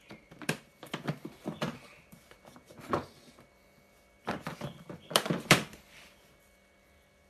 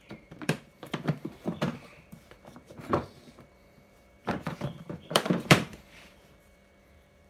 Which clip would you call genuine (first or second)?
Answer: first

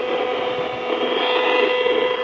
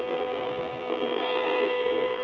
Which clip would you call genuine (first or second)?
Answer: first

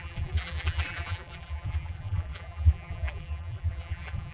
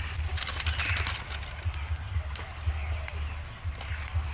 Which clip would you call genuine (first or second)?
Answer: second